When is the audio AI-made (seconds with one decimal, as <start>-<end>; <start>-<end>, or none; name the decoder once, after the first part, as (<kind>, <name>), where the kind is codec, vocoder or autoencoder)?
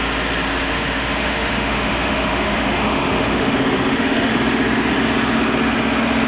0.5-4.3 (autoencoder, DAC-VAE)